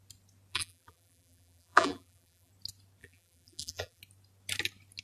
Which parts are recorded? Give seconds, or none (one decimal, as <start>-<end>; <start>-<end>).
0.0-0.5; 2.5-3.0; 4.0-5.0